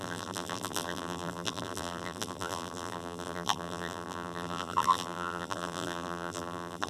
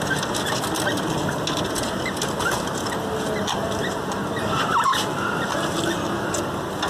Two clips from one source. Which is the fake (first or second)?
first